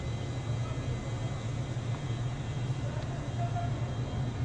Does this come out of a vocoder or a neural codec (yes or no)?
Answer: no